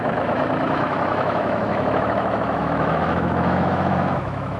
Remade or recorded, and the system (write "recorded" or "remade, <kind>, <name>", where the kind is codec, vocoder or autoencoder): remade, autoencoder, DAC-VAE